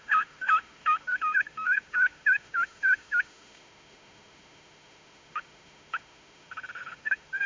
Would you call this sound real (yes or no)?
no